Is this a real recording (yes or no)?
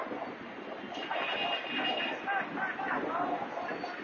yes